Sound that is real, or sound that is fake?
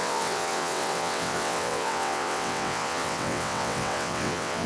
fake